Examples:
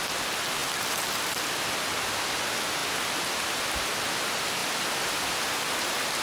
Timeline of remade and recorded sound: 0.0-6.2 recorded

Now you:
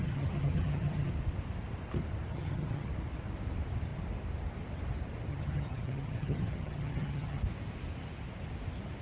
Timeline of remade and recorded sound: 0.0-1.1 remade; 1.1-2.3 recorded; 2.3-2.9 remade; 2.9-5.3 recorded; 5.3-7.4 remade; 7.4-9.0 recorded